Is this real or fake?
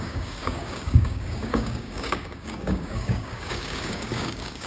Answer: fake